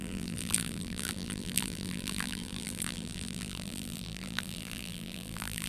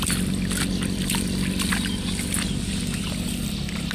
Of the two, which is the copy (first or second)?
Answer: first